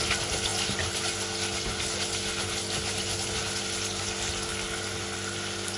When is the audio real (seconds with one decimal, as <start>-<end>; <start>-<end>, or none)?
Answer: 0.0-5.8